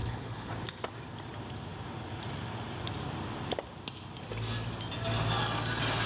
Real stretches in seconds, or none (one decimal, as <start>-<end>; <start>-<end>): 0.5-6.1